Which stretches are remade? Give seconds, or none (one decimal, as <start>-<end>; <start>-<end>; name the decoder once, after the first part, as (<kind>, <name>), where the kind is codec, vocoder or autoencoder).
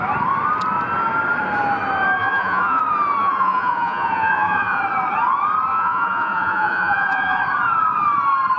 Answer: 2.2-2.8 (vocoder, Vocos); 3.2-4.8; 5.7-7.4